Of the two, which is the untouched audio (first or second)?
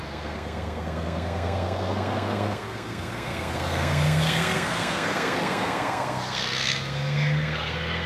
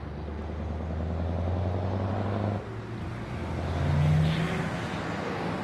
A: second